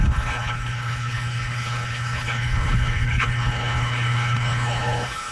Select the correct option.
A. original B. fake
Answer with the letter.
B